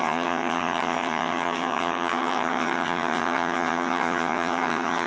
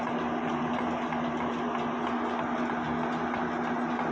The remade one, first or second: first